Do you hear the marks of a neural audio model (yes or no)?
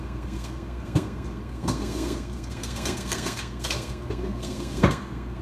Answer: yes